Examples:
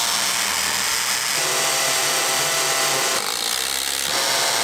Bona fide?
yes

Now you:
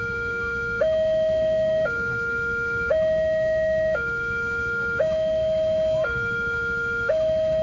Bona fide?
no